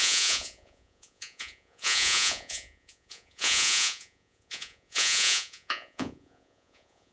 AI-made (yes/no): yes